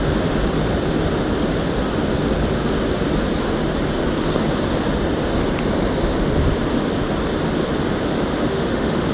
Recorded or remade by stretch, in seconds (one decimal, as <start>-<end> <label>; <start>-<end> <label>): 0.0-8.3 recorded; 8.3-9.1 remade